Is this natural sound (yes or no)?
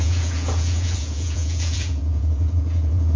no